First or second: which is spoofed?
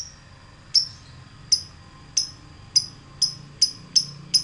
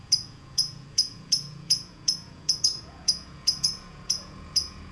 second